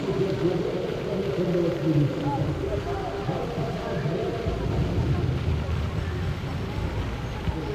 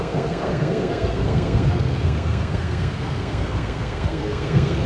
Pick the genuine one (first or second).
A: first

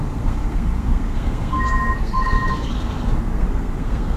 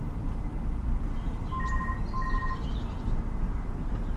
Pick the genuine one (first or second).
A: second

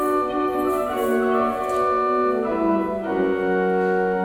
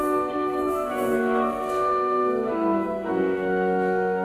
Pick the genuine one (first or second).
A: first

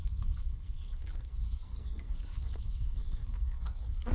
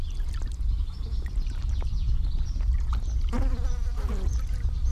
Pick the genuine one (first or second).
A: second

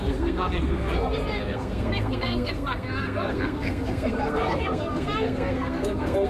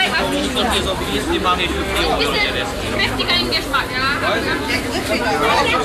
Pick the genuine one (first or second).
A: second